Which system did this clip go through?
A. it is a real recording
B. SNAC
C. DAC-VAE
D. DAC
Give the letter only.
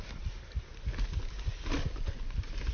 A